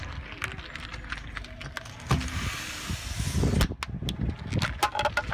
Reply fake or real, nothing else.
real